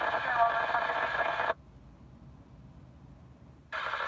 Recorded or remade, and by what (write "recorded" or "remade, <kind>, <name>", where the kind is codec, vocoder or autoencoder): recorded